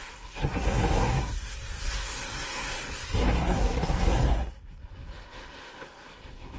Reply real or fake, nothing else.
fake